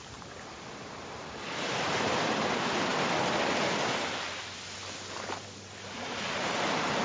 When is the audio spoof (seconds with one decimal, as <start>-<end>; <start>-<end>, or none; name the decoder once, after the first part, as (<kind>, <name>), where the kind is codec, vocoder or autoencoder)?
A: none